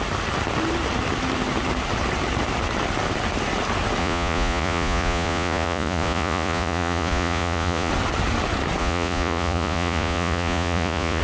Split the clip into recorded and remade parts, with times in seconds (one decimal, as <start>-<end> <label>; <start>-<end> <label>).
0.0-4.0 recorded; 4.0-7.9 remade; 7.9-8.8 recorded; 8.8-11.2 remade